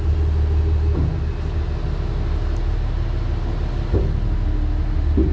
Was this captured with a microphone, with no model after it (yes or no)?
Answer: yes